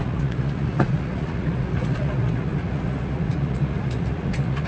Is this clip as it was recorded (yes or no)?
no